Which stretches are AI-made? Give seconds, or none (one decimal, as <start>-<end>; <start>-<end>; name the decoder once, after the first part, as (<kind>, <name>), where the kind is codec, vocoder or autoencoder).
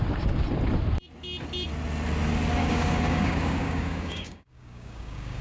2.6-5.4 (codec, DAC)